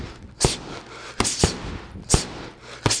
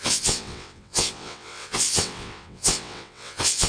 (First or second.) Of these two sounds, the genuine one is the first